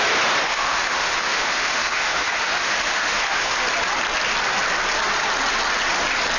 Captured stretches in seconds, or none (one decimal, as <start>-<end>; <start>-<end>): 0.0-0.4; 3.5-6.4